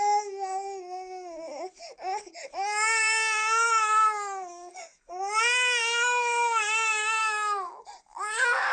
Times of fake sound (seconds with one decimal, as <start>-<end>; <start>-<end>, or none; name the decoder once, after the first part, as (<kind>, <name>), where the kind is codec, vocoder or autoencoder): 0.0-8.7 (codec, DAC)